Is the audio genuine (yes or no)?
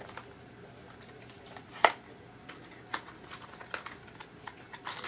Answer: yes